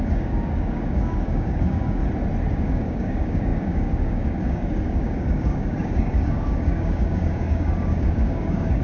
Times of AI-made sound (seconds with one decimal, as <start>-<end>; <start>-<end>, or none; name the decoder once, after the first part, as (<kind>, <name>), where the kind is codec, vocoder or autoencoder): 0.0-2.0 (codec, DAC); 2.5-8.8